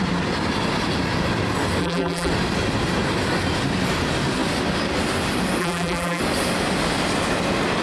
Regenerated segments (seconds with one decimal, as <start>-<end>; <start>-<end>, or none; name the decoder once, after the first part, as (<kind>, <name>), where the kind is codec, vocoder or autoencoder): 1.8-2.3 (vocoder, BigVGAN v2); 5.6-6.2

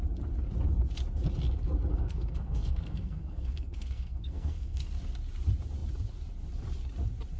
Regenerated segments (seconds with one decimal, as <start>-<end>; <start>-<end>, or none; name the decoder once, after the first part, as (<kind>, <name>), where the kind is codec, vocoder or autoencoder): 1.9-4.9 (codec, SNAC)